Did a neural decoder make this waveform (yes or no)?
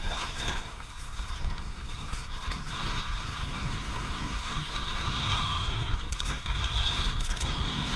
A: yes